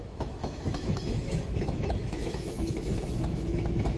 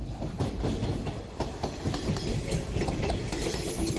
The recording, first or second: second